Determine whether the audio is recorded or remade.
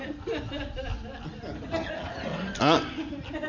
recorded